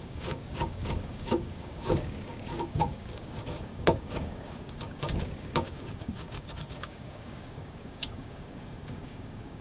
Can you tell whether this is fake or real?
fake